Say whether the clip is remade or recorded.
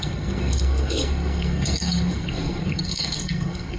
remade